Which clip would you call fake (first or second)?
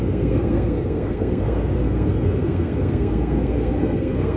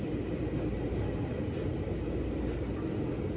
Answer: first